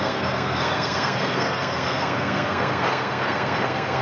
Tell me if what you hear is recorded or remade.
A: remade